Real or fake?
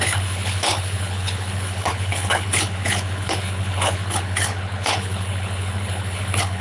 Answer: fake